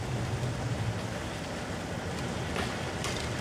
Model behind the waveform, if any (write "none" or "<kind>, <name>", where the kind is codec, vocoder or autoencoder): none